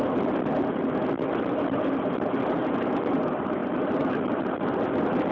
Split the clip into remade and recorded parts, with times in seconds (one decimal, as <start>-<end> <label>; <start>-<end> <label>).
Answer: 0.0-5.3 recorded